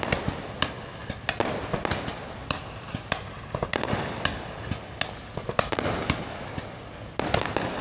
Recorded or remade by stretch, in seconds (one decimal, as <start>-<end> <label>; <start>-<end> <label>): 0.0-2.4 recorded; 2.4-3.4 remade; 3.4-7.8 recorded